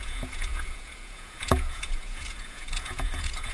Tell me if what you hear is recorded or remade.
remade